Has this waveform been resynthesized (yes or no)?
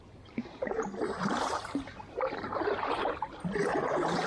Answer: yes